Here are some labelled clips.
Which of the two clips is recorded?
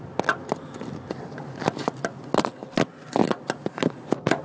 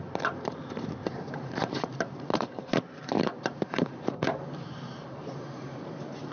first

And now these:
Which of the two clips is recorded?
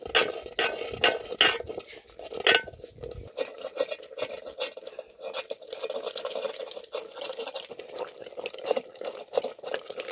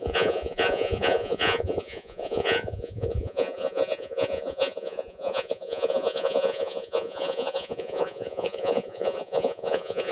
first